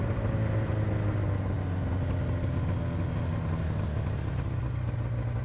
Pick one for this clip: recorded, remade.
recorded